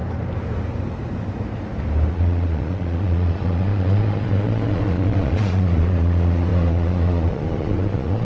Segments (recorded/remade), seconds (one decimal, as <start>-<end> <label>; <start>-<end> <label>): 0.0-2.1 recorded; 2.1-8.2 remade